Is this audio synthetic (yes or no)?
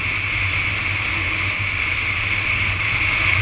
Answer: no